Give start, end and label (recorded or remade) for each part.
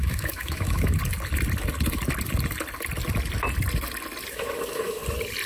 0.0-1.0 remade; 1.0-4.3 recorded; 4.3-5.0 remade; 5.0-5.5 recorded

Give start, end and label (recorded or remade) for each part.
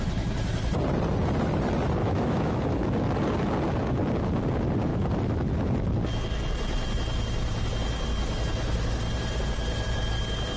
0.0-2.0 recorded; 2.0-2.8 remade; 2.8-10.6 recorded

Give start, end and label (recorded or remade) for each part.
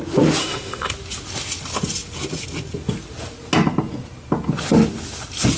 0.0-0.4 recorded; 0.4-0.9 remade; 0.9-5.6 recorded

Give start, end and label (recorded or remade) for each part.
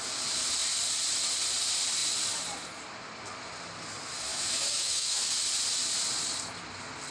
0.0-4.3 recorded; 4.3-5.3 remade; 5.3-7.1 recorded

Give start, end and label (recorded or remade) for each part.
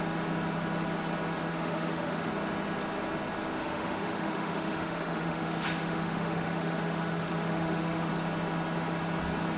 0.0-1.5 recorded; 1.5-2.3 remade; 2.3-3.6 recorded; 3.6-8.1 remade; 8.1-9.6 recorded